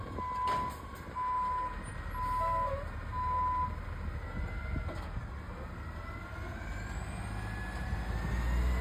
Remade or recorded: recorded